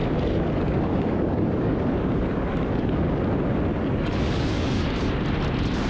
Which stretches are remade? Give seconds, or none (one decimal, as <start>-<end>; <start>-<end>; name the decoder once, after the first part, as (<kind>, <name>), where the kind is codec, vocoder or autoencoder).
0.0-3.2 (codec, DAC); 3.7-5.1